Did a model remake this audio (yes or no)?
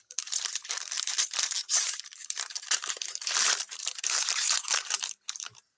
yes